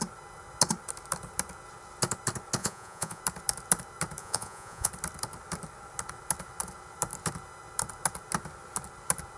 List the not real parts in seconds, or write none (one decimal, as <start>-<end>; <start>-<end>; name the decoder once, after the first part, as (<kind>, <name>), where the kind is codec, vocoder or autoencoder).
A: 2.6-3.2 (vocoder, Vocos); 4.2-4.9

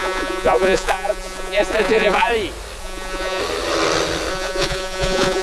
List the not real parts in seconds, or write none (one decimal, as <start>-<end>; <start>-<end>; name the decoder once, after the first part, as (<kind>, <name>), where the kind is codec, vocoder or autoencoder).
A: 0.0-2.3 (vocoder, Vocos); 2.8-3.4; 4.3-5.4